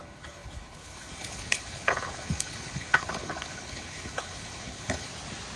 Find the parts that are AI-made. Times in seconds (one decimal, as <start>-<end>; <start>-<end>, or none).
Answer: 0.0-5.1